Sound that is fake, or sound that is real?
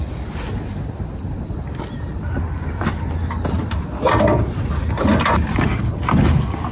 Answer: real